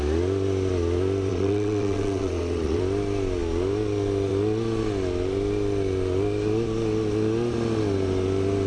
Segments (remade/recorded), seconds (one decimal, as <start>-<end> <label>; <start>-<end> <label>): 0.0-1.3 recorded; 1.3-2.8 remade; 2.8-8.7 recorded